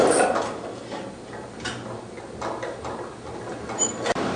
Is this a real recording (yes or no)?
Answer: yes